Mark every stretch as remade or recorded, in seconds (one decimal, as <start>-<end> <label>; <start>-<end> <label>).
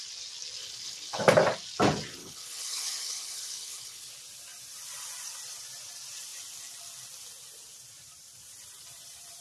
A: 0.0-0.6 recorded; 0.6-1.2 remade; 1.2-2.2 recorded; 2.2-4.1 remade; 4.1-9.4 recorded